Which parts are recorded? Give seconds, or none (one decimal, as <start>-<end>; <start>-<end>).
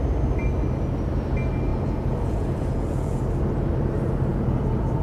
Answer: 0.0-1.7; 3.4-4.3